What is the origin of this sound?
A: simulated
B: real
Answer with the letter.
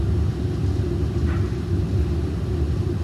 B